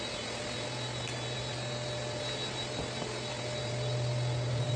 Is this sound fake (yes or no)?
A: no